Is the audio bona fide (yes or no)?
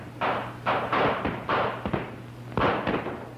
yes